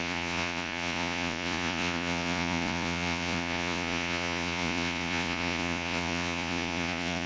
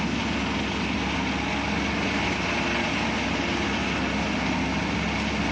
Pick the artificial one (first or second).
first